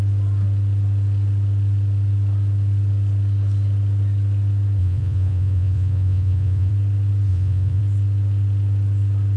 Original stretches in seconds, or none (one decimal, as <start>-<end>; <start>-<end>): 0.0-4.8; 6.7-7.3; 7.8-9.4